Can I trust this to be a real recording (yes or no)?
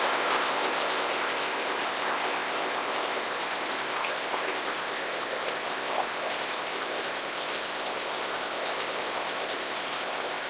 no